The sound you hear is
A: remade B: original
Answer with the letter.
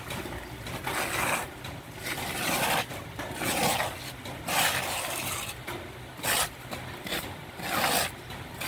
B